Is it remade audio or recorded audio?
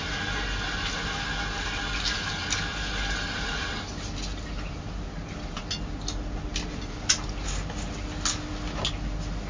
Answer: recorded